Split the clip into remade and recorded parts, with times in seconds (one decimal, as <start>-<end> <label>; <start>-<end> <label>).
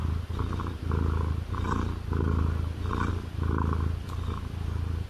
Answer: 0.0-5.1 recorded